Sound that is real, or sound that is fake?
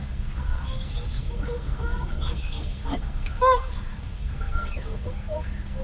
fake